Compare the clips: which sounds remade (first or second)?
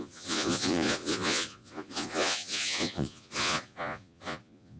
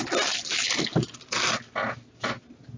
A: first